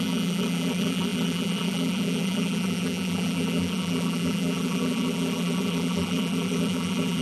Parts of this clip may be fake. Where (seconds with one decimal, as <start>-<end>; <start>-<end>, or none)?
0.0-7.2